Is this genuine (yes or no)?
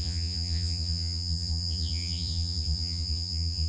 no